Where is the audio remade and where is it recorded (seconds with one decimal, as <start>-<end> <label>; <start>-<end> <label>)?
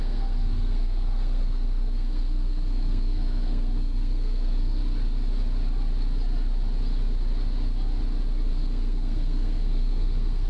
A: 0.0-4.8 remade; 4.8-8.5 recorded; 8.5-10.5 remade